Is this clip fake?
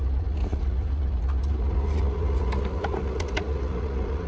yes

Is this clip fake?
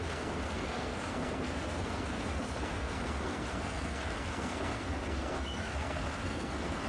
yes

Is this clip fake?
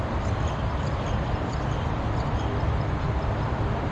no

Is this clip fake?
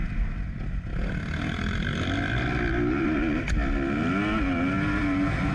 no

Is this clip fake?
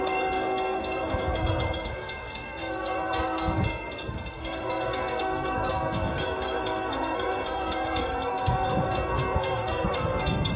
yes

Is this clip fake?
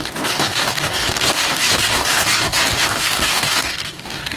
yes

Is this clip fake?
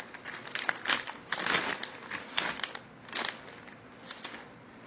no